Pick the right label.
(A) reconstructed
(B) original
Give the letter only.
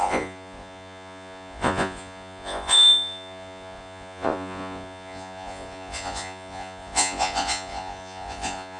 A